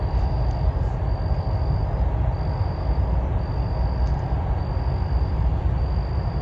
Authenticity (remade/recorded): recorded